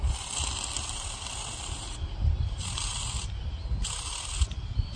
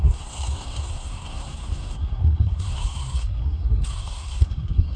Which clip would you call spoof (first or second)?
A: second